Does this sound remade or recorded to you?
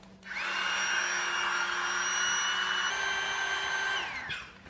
recorded